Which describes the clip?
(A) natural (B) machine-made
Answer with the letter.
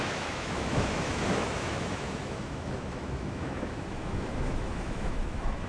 B